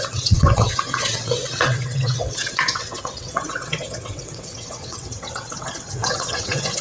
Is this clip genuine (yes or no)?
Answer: no